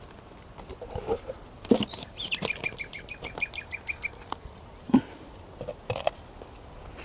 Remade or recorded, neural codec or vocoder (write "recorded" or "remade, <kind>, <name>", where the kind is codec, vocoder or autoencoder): recorded